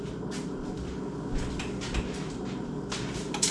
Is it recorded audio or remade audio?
recorded